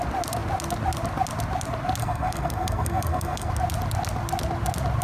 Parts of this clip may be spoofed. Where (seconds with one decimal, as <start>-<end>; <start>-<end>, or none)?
2.0-3.5